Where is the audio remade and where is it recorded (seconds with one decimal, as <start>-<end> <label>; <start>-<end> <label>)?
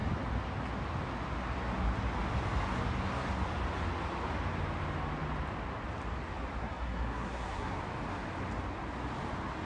0.0-6.6 recorded; 6.6-7.8 remade; 7.8-9.7 recorded